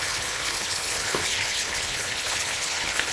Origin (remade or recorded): remade